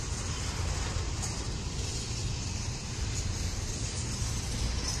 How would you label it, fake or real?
real